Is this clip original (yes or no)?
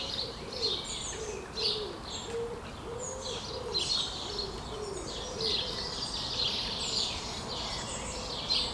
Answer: yes